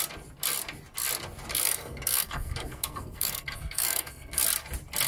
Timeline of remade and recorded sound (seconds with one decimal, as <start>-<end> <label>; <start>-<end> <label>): 0.0-1.5 recorded; 1.5-4.4 remade; 4.4-5.1 recorded